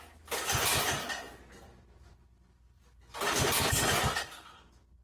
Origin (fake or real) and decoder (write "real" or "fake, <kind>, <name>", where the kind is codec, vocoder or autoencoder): real